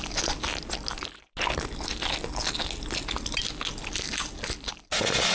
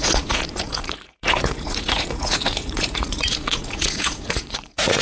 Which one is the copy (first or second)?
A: second